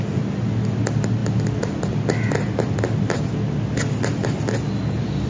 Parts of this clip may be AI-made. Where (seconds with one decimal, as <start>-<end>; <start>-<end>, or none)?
none